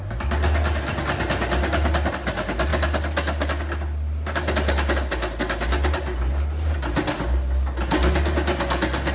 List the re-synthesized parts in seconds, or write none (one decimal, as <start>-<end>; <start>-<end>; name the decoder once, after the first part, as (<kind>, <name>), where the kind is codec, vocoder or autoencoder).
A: none